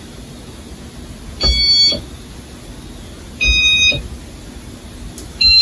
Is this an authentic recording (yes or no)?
yes